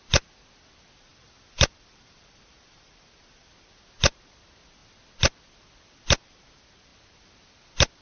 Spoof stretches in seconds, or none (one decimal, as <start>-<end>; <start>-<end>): 1.1-3.2